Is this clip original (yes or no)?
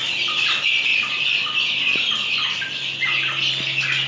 yes